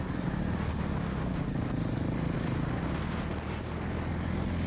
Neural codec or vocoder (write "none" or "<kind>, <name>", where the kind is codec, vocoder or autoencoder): none